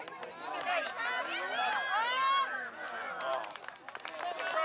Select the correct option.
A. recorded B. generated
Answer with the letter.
A